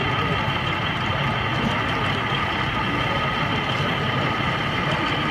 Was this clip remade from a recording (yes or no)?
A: no